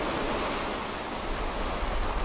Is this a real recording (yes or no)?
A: yes